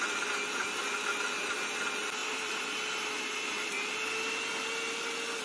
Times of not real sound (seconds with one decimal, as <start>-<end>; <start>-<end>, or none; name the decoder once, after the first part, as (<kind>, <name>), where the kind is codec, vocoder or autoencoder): 2.2-2.8 (vocoder, BigVGAN v2)